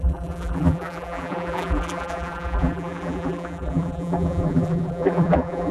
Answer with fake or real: fake